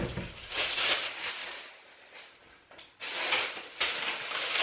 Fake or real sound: real